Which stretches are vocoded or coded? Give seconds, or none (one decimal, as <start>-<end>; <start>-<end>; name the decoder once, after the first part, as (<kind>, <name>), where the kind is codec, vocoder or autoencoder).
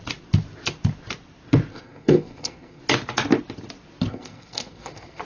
1.7-2.8 (codec, SNAC); 4.1-5.2